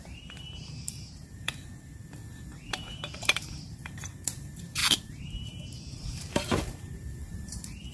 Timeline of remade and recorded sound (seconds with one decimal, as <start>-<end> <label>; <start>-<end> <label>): 0.0-1.7 remade; 1.7-2.6 recorded; 2.6-7.9 remade